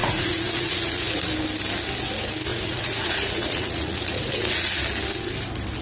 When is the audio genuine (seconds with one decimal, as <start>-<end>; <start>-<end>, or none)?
1.3-2.5; 4.8-5.8